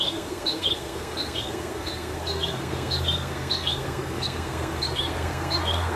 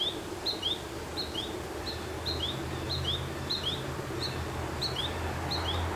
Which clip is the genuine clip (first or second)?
second